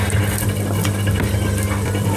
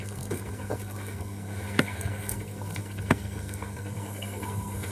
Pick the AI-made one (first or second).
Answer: second